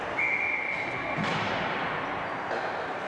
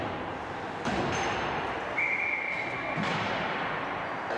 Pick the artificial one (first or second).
second